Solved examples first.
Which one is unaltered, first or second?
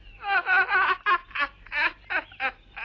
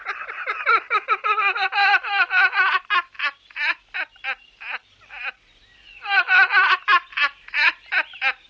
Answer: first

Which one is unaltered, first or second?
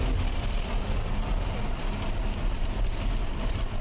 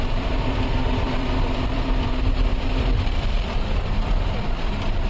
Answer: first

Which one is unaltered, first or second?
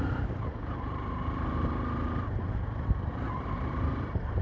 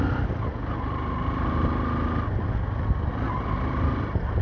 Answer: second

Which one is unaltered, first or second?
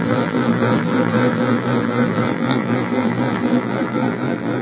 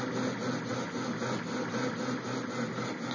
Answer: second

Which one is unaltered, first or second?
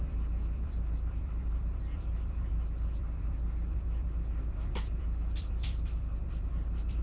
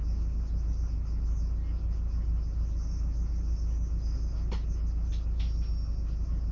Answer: second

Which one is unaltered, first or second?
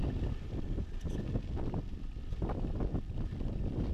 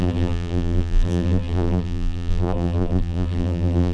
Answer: first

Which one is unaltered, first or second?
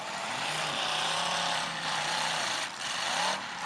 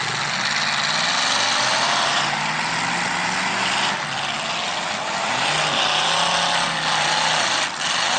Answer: second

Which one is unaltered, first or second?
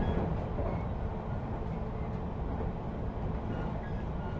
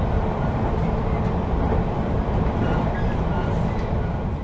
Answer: first